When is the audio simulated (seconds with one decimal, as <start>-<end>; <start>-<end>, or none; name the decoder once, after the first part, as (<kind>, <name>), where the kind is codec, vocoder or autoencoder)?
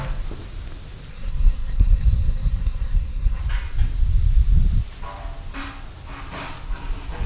1.1-3.4 (codec, SNAC)